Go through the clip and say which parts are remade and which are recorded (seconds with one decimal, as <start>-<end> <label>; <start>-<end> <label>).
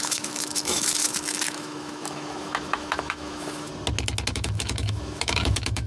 0.0-3.7 remade; 3.7-4.3 recorded; 4.3-5.9 remade